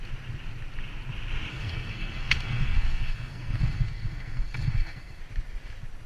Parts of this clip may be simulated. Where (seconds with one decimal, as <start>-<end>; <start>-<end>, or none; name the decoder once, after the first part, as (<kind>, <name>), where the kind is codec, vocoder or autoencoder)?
1.5-5.2 (codec, SNAC)